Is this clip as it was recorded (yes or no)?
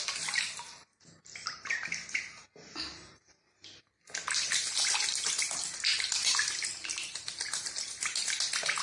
yes